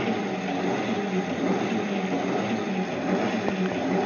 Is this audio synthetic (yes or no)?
no